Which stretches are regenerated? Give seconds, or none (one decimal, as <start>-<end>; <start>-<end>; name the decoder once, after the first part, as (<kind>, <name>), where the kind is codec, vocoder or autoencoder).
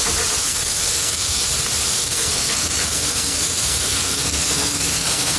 0.4-1.5 (codec, SNAC); 1.9-5.4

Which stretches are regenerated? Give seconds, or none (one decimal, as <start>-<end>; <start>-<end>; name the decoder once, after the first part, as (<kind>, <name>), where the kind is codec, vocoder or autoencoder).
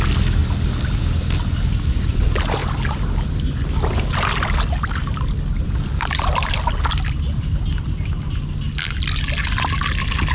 none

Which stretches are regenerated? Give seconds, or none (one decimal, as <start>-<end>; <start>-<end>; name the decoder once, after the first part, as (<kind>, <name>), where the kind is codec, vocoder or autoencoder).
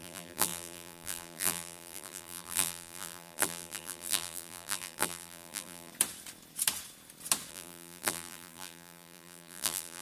0.0-5.9 (vocoder, BigVGAN v2); 7.5-10.0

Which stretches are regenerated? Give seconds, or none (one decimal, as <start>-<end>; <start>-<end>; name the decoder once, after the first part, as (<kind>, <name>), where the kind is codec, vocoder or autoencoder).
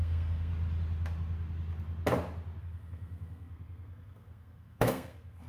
0.0-0.5 (codec, SNAC); 2.6-5.5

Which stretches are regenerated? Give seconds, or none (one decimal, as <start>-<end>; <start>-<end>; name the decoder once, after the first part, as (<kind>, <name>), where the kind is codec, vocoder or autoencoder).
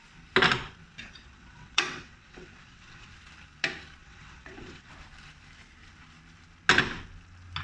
1.2-3.1 (vocoder, WaveNeXt); 4.0-4.9